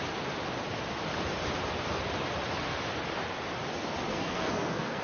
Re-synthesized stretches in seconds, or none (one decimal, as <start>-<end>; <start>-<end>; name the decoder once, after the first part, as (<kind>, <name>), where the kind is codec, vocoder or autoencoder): 4.1-5.0 (codec, SNAC)